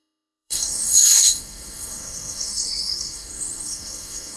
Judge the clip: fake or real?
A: fake